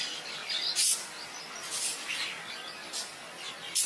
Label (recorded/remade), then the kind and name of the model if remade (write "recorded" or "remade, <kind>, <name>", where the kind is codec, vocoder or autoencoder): recorded